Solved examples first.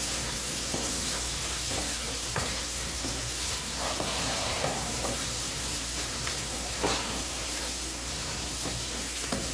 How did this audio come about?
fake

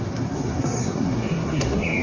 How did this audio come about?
fake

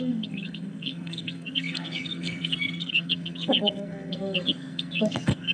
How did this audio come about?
fake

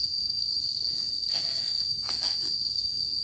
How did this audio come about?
fake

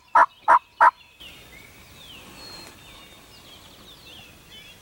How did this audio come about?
real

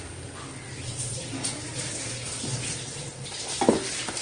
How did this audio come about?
real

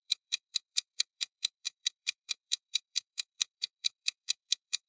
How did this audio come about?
fake